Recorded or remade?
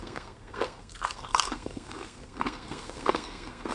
remade